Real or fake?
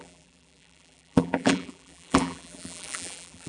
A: fake